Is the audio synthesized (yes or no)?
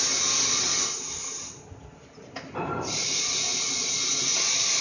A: no